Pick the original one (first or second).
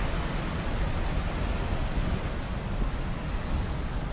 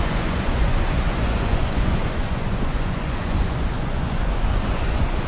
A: first